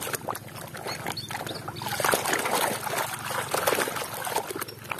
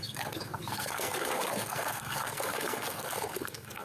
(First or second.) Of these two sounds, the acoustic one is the first